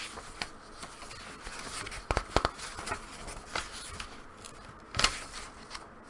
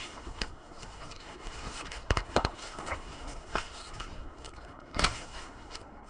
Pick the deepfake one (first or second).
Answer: second